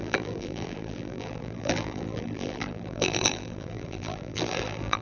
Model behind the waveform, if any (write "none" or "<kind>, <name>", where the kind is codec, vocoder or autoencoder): vocoder, BigVGAN v2